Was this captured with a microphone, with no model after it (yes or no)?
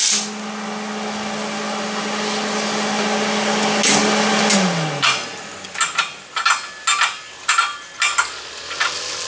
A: yes